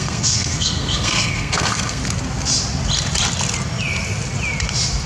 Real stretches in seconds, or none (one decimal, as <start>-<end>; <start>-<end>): 2.0-5.1